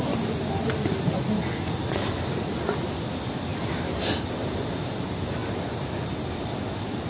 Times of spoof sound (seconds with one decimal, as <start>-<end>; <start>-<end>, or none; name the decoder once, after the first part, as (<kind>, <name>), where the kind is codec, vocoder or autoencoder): none